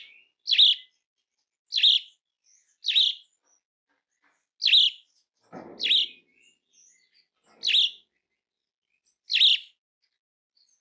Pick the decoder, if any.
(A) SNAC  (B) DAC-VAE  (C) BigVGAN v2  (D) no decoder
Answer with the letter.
D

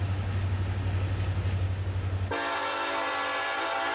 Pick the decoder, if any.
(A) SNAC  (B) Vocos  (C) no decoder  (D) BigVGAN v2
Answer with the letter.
C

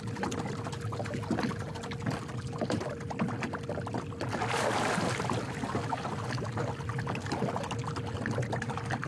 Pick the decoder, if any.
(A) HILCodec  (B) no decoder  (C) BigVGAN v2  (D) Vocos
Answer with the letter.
B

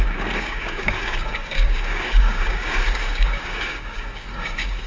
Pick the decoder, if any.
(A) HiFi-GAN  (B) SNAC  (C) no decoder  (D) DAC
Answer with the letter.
D